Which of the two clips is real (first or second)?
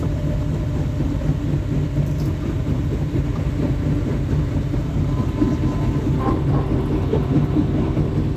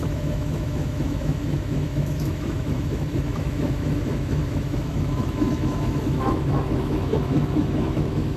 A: first